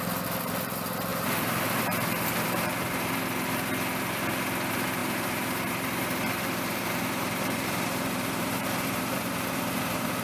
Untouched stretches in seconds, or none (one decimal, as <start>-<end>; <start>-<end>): 0.0-1.1; 3.2-5.0